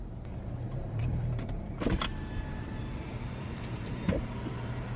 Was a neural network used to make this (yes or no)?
yes